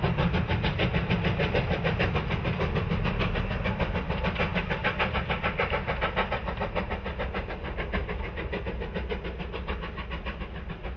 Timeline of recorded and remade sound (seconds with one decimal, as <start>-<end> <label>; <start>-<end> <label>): 0.0-4.5 recorded; 4.5-5.7 remade; 5.7-11.0 recorded